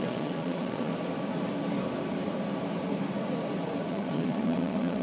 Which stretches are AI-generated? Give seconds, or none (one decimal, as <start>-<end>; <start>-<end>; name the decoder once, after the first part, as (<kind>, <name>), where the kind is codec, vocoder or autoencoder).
0.0-0.9 (vocoder, Vocos); 3.9-5.0